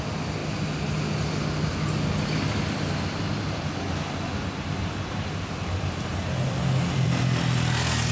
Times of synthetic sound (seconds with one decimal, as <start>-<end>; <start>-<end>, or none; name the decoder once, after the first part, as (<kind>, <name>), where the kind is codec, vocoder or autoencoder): 0.0-0.4 (vocoder, BigVGAN v2); 5.2-6.1; 6.9-8.1